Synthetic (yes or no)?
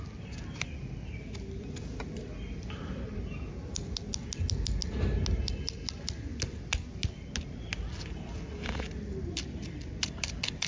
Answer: no